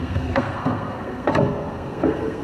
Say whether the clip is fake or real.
fake